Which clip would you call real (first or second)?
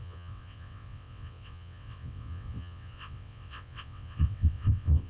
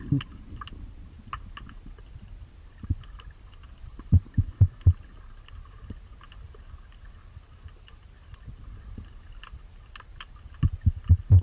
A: second